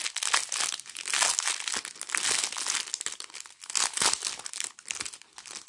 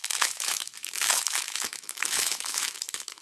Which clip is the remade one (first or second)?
second